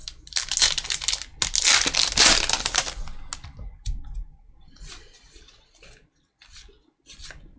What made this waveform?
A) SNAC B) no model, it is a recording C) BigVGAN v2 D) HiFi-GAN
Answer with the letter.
B